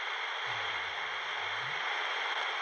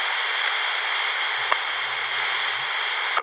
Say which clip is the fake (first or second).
first